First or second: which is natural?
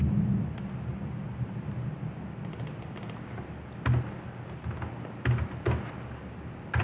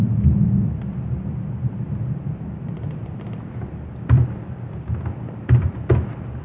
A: first